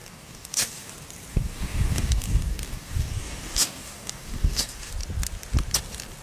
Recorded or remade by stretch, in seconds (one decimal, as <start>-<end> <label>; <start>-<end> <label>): 0.0-0.9 remade; 0.9-1.3 recorded; 1.3-4.9 remade; 4.9-6.2 recorded